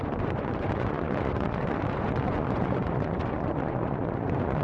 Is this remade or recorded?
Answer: remade